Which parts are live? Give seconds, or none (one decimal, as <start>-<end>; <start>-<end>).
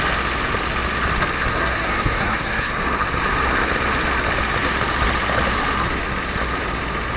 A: 0.0-1.5; 2.7-7.2